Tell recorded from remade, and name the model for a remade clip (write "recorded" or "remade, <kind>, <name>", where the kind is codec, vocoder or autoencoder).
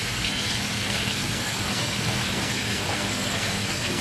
remade, codec, SNAC